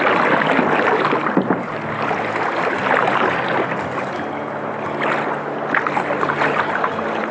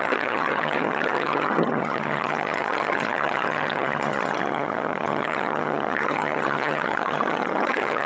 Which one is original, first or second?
first